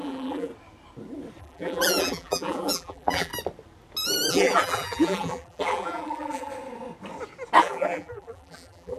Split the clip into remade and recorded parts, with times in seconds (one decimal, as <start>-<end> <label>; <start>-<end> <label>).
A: 0.0-0.5 remade; 0.5-1.4 recorded; 1.4-3.3 remade; 3.3-4.3 recorded; 4.3-6.5 remade; 6.5-7.6 recorded; 7.6-9.0 remade